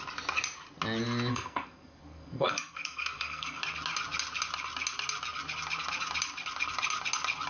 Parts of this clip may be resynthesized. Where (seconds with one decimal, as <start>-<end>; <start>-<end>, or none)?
1.3-3.6